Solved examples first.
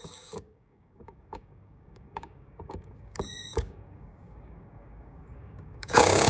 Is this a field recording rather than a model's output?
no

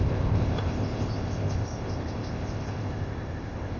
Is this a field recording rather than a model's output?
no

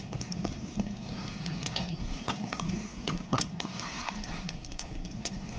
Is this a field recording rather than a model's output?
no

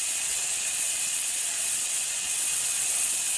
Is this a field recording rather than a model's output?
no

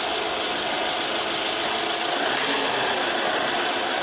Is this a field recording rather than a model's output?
yes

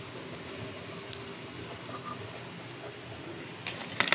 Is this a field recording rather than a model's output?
yes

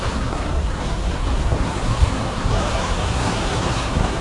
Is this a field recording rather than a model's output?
no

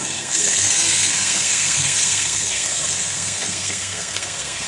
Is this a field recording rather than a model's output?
no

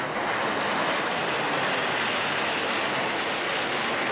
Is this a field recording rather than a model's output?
yes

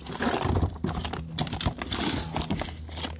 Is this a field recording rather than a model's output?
yes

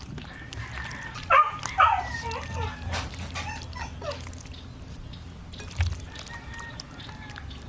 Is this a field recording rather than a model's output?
yes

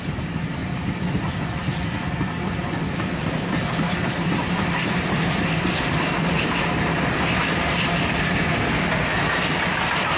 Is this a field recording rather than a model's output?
yes